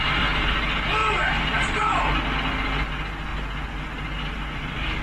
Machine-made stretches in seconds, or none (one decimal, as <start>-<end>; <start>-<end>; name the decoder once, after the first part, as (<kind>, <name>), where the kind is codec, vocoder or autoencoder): 1.0-2.2 (vocoder, BigVGAN v2)

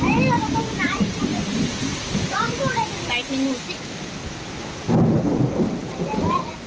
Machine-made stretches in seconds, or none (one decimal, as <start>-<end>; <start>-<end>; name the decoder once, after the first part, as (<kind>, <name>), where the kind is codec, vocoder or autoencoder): 1.3-4.5 (vocoder, BigVGAN v2); 5.8-6.7

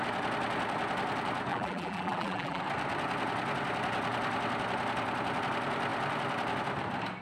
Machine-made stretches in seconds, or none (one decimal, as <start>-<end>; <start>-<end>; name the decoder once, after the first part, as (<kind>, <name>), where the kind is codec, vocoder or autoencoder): 1.5-2.6 (vocoder, BigVGAN v2)

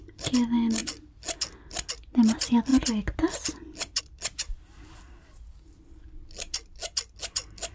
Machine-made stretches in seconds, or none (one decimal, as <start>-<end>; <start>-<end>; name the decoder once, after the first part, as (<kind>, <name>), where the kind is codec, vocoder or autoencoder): none

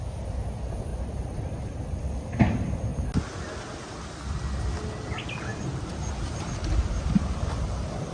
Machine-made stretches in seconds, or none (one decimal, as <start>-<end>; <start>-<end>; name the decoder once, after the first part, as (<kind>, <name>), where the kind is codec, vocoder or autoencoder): 0.9-1.8 (vocoder, BigVGAN v2); 5.5-8.1